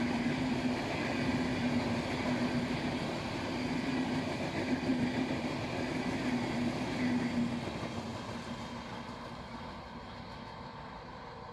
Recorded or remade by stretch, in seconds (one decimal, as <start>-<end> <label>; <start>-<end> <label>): 0.0-4.9 recorded; 4.9-5.6 remade; 5.6-11.5 recorded